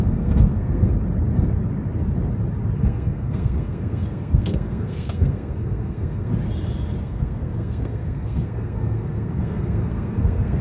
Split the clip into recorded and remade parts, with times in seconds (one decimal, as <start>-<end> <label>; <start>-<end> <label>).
0.0-0.9 remade; 0.9-2.8 recorded; 2.8-6.3 remade; 6.3-7.0 recorded; 7.0-10.6 remade